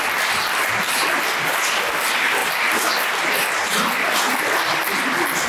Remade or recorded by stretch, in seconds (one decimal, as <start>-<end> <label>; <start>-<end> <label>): 0.0-2.4 remade; 2.4-5.0 recorded; 5.0-5.5 remade